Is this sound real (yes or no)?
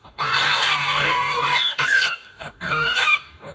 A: no